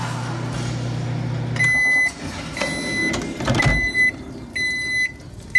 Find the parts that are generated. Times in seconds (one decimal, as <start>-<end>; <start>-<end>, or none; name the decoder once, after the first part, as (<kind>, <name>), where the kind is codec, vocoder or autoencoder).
none